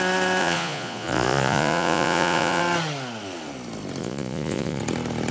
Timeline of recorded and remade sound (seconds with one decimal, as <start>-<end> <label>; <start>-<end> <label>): 0.0-0.4 recorded; 0.4-2.6 remade; 2.6-4.0 recorded; 4.0-4.8 remade; 4.8-5.3 recorded